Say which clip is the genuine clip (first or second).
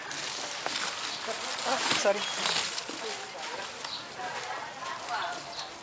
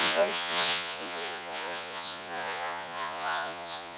first